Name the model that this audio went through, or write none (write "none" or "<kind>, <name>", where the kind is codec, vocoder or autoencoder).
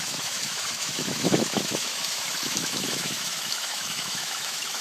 autoencoder, DAC-VAE